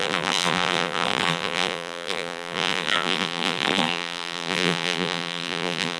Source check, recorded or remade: remade